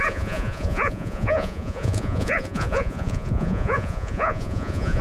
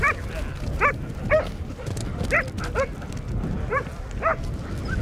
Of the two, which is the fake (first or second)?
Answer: first